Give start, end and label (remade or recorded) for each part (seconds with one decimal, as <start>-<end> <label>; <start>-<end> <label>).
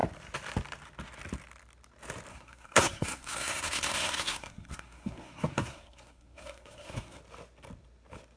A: 0.0-2.3 recorded; 2.3-7.2 remade; 7.2-8.4 recorded